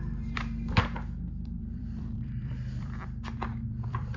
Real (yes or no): no